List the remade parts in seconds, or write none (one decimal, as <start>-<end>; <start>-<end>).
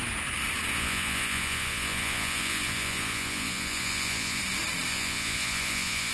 0.7-4.4; 4.9-6.1